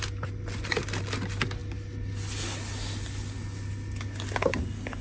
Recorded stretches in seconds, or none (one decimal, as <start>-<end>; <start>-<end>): 0.0-5.0